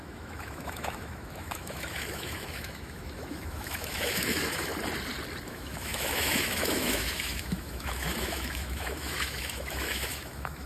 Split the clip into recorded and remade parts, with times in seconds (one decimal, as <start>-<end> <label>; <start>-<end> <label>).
0.0-4.7 remade; 4.7-5.5 recorded; 5.5-10.7 remade

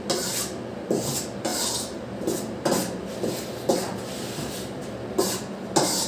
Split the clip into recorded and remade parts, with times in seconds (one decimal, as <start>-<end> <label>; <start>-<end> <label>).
0.0-6.1 recorded